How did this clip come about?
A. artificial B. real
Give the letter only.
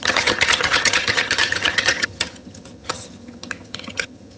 A